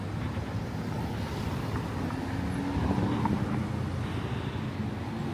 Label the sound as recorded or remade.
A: recorded